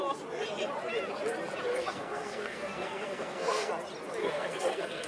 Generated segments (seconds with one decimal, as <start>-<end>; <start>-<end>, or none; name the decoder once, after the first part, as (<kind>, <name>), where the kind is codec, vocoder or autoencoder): 1.7-3.7 (codec, SNAC); 4.2-5.1